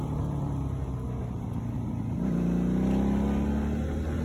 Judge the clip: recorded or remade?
recorded